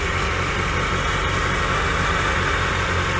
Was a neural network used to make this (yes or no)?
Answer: no